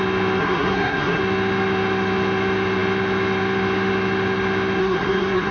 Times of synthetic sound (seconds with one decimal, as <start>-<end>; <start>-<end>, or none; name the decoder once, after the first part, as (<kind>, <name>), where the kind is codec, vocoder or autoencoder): 0.4-1.2 (codec, SNAC); 4.8-5.5